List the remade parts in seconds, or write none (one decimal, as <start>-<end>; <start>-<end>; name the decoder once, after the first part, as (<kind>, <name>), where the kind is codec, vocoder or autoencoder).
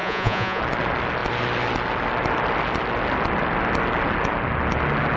0.0-0.6 (vocoder, Vocos)